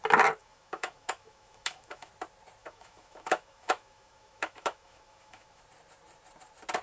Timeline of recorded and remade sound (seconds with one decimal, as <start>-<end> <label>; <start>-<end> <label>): 0.0-0.4 recorded; 0.4-2.1 remade; 2.1-2.6 recorded; 2.6-5.6 remade; 5.6-6.8 recorded